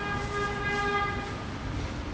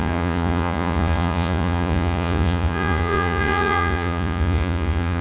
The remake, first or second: second